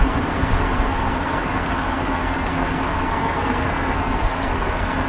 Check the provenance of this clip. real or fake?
fake